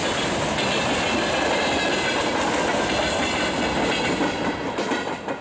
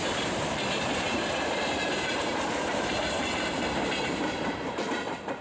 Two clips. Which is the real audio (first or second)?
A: first